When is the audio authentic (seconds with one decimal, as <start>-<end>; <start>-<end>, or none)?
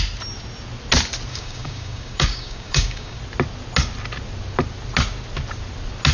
0.0-1.3; 3.2-6.1